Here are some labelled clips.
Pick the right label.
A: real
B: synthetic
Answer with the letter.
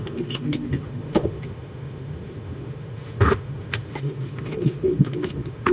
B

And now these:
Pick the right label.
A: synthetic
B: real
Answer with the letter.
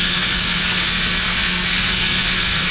A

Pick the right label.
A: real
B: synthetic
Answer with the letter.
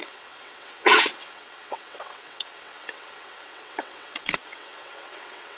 B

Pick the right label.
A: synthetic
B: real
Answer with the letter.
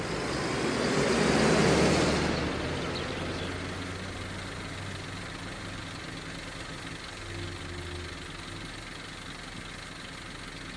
B